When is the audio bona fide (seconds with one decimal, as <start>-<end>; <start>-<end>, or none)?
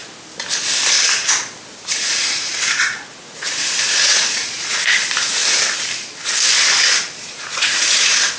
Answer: 0.0-2.0; 5.4-7.2